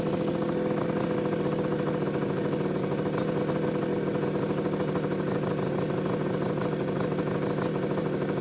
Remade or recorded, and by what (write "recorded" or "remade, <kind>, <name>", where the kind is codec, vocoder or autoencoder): recorded